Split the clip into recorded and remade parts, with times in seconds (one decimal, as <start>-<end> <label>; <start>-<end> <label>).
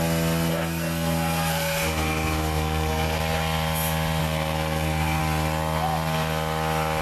0.0-0.5 recorded; 0.5-3.2 remade; 3.2-4.2 recorded; 4.2-5.2 remade; 5.2-7.0 recorded